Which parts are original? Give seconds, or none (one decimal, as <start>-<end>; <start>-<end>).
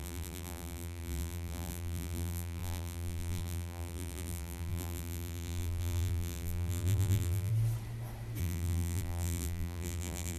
7.5-8.4